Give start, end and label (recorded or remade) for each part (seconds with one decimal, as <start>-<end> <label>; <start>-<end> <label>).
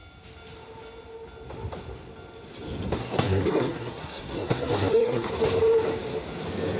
0.0-3.0 recorded; 3.0-5.3 remade; 5.3-6.8 recorded